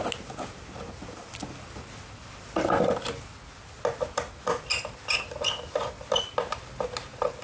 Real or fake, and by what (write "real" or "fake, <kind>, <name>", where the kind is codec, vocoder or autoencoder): real